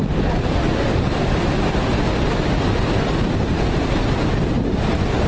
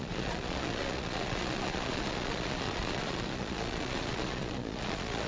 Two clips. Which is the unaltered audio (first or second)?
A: first